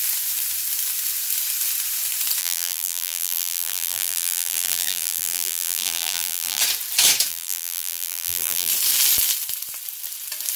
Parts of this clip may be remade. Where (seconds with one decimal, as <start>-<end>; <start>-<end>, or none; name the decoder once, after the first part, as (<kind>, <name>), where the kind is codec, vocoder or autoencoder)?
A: 2.4-6.6 (vocoder, BigVGAN v2); 7.3-8.7